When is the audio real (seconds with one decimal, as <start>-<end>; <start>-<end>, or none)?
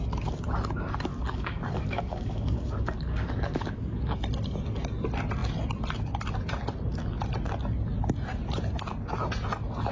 0.0-1.1; 4.2-9.9